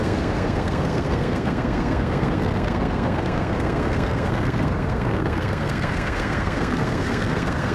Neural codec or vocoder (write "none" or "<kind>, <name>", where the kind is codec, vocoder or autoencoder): codec, SNAC